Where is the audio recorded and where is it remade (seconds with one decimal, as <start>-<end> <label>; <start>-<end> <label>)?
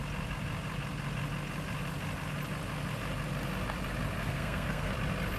0.0-4.2 recorded; 4.2-4.9 remade; 4.9-5.4 recorded